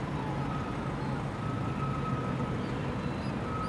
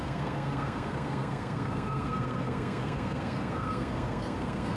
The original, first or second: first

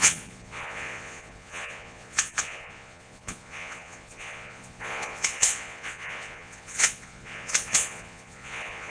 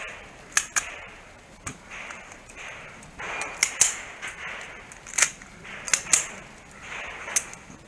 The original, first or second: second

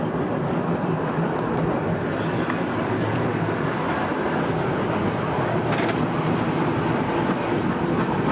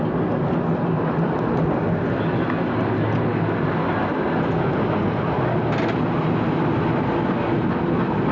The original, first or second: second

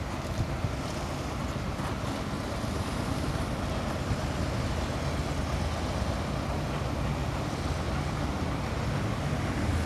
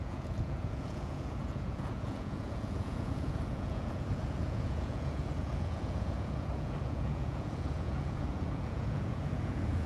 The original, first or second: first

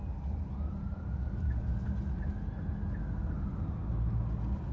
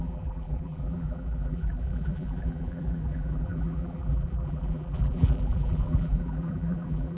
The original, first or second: first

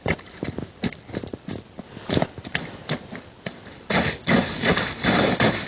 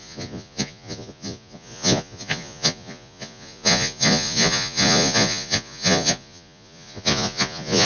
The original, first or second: first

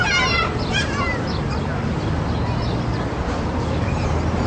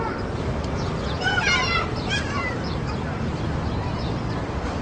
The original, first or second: first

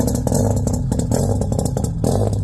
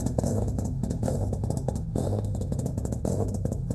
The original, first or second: first